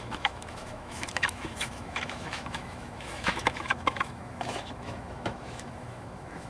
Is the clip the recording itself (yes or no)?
no